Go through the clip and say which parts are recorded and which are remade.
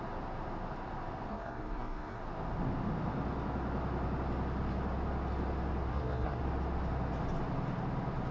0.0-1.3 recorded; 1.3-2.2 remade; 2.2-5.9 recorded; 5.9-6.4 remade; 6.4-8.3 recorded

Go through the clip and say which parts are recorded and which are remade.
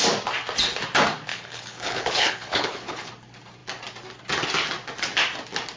0.0-1.3 recorded; 1.3-3.1 remade; 3.1-5.8 recorded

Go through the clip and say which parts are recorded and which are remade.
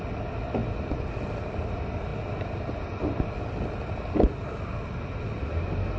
0.0-6.0 recorded